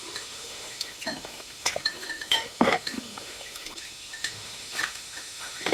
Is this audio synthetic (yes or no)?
yes